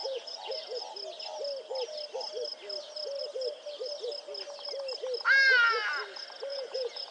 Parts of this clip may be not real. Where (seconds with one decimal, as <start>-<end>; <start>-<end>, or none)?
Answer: 0.0-0.8; 6.5-7.1